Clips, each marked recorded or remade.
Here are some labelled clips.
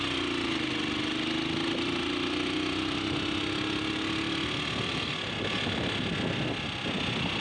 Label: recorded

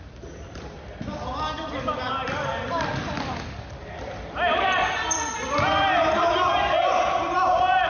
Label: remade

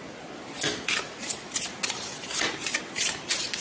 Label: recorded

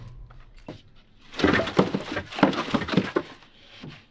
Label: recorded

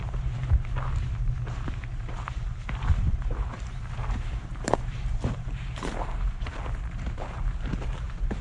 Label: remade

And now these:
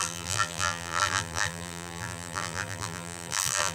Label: remade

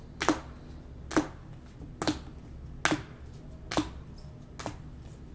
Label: recorded